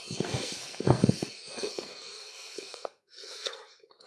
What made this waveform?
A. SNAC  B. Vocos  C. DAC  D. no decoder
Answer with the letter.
A